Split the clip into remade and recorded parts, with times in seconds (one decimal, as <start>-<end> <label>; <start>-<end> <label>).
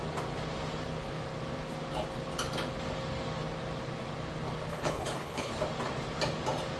0.0-4.7 recorded; 4.7-5.5 remade; 5.5-6.8 recorded